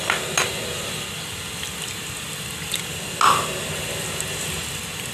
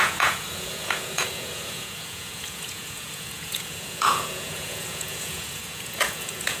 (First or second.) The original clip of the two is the first